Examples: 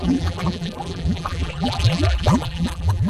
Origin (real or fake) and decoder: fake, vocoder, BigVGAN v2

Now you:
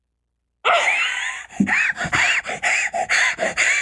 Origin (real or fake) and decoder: real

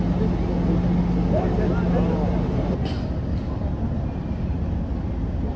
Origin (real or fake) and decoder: real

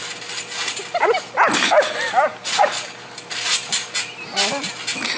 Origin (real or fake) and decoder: real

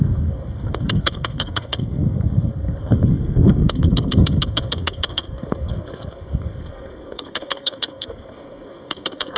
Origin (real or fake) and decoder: fake, codec, SNAC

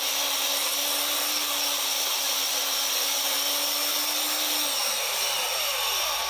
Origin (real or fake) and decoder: real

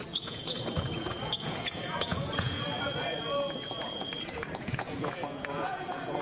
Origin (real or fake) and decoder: fake, vocoder, Vocos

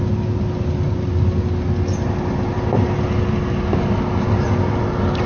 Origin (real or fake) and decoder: real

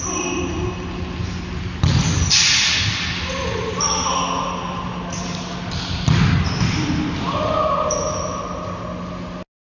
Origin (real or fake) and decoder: real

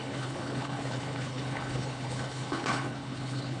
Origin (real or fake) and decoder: fake, codec, HILCodec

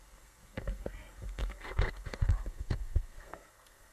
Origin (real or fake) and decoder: fake, codec, SNAC